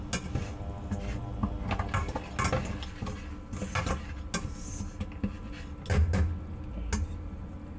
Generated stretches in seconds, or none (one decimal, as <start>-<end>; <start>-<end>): none